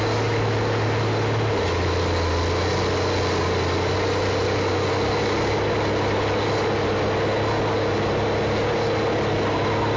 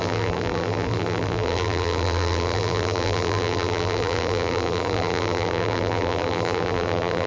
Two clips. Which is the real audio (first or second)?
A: first